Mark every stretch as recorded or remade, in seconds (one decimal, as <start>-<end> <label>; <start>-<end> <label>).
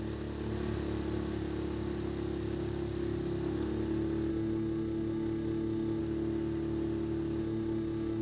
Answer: 0.0-4.3 recorded; 4.3-6.0 remade; 6.0-7.4 recorded; 7.4-8.2 remade